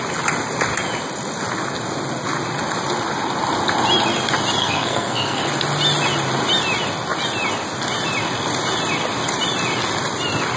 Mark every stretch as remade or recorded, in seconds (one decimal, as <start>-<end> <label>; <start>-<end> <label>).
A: 0.0-4.6 recorded; 4.6-5.4 remade; 5.4-10.6 recorded